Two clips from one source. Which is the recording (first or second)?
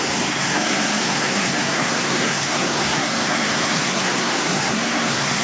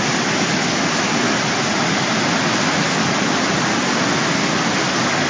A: second